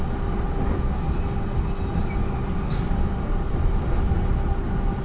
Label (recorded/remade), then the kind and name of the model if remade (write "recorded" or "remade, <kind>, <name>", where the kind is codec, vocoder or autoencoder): recorded